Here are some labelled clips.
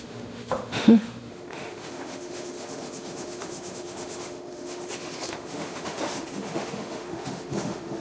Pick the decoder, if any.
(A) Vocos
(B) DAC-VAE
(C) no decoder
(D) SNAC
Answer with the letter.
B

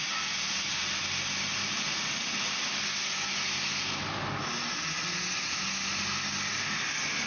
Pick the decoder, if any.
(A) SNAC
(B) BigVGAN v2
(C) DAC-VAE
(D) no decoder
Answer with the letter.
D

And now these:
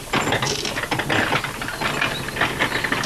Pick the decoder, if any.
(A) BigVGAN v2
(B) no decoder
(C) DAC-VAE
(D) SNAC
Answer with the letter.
B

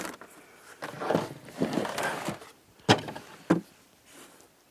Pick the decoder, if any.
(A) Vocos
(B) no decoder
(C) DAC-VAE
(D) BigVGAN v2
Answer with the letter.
B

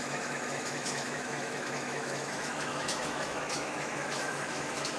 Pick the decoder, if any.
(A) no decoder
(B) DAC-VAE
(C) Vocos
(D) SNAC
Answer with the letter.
B